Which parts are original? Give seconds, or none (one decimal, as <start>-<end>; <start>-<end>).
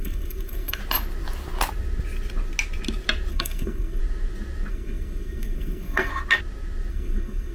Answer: 0.8-3.3; 4.0-4.7; 6.1-6.9